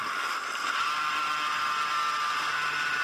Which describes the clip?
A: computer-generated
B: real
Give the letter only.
B